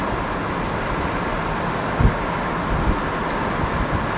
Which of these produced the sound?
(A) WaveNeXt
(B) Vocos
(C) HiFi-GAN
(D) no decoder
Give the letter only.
D